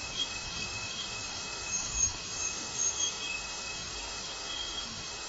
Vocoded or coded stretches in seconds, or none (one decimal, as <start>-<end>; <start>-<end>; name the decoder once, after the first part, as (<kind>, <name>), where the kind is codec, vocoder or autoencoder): 0.0-5.3 (autoencoder, DAC-VAE)